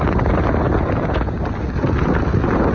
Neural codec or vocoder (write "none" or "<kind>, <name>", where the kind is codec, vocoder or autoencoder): none